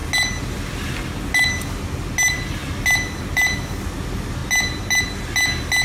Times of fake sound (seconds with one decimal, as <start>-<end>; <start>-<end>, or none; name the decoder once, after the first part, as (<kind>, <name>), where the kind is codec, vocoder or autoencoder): none